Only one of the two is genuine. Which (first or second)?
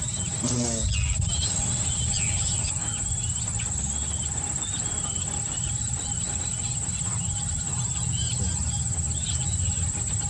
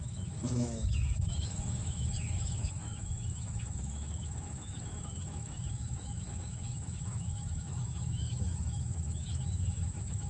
first